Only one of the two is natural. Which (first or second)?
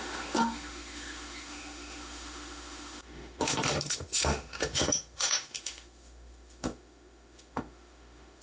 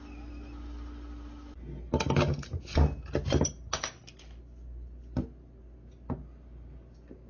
second